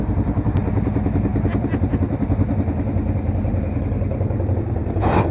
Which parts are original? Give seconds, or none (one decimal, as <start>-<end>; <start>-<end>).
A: 0.0-5.3

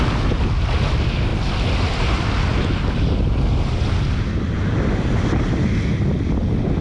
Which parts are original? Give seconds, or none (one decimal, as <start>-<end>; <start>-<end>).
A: 0.0-6.8

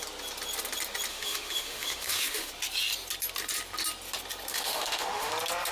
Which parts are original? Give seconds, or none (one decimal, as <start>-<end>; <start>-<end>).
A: 0.0-1.1; 2.5-4.5; 5.3-5.7

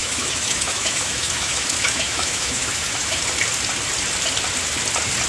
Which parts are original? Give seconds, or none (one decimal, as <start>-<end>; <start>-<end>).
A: 3.2-5.3

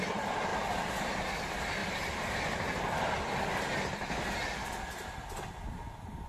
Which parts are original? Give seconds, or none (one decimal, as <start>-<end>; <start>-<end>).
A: 0.0-6.3

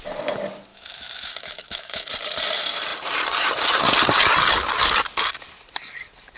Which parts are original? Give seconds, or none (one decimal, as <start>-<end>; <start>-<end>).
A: 0.0-0.7; 2.1-6.4